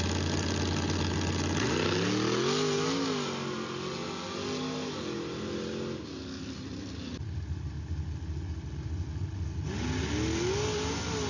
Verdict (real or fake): real